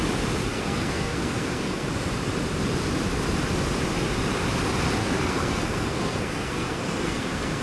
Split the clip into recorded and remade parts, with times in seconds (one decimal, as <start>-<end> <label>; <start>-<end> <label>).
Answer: 0.0-0.5 recorded; 0.5-1.9 remade; 1.9-5.0 recorded; 5.0-7.6 remade

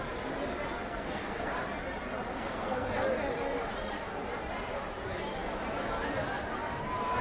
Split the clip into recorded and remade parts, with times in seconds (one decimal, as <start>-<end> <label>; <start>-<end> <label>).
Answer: 0.0-0.8 recorded; 0.8-1.5 remade; 1.5-2.3 recorded; 2.3-2.9 remade; 2.9-7.2 recorded

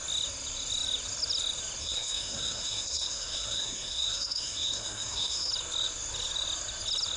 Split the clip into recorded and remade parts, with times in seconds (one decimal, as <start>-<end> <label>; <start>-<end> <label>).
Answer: 0.0-1.8 recorded; 1.8-5.5 remade; 5.5-7.2 recorded

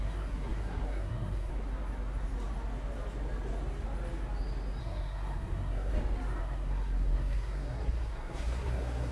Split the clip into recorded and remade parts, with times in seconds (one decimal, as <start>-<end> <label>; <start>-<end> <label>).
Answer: 0.0-1.5 remade; 1.5-4.8 recorded; 4.8-5.9 remade; 5.9-6.4 recorded; 6.4-9.1 remade

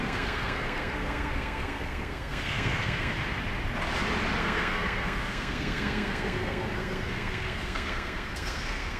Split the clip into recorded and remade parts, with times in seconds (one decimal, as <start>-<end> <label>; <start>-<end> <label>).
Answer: 0.0-3.1 remade; 3.1-4.4 recorded; 4.4-9.0 remade